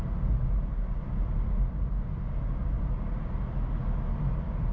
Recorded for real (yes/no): yes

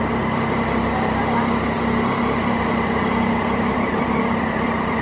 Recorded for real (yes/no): yes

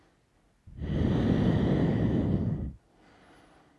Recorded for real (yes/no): yes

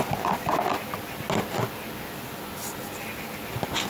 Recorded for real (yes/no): yes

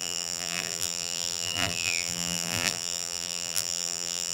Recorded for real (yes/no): no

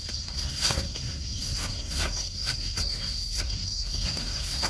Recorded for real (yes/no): no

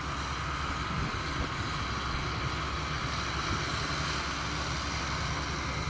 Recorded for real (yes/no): yes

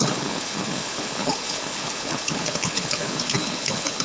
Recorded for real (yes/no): no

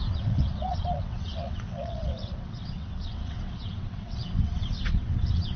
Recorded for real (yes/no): no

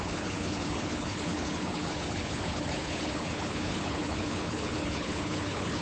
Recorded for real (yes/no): no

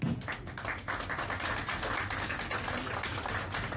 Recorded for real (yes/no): yes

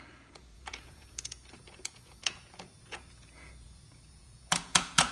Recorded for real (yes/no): no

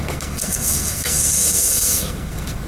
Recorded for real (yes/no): no